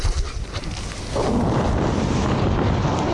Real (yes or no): yes